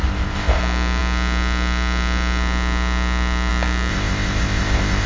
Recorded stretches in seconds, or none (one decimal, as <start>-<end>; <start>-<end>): 0.6-3.9